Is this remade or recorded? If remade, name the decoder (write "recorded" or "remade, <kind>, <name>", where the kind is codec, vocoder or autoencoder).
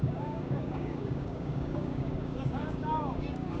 remade, codec, DAC